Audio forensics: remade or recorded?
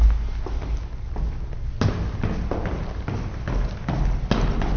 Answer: recorded